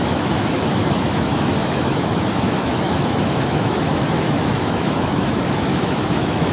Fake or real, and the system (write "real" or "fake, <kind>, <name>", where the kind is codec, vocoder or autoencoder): fake, autoencoder, DAC-VAE